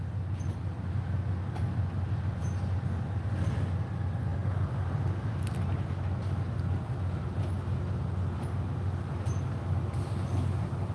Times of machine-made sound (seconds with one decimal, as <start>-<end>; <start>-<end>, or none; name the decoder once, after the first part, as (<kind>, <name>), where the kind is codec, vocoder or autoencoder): none